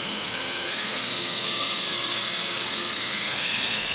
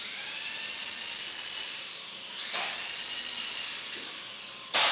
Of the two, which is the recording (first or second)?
second